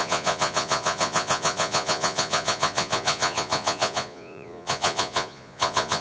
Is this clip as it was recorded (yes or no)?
no